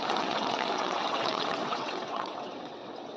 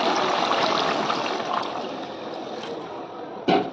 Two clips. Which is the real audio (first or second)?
second